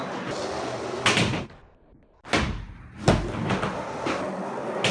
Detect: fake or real real